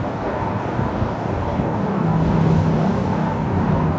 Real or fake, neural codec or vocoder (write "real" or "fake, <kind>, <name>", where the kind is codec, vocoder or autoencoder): fake, codec, DAC